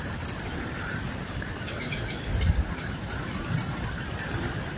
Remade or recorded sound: remade